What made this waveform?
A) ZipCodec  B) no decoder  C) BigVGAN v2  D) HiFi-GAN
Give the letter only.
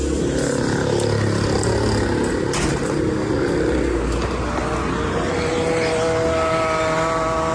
B